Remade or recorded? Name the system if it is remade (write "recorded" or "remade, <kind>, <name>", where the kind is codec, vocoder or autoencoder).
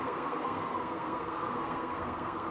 remade, codec, SNAC